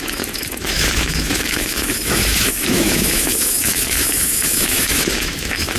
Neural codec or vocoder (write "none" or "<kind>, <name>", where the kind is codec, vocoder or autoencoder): autoencoder, DAC-VAE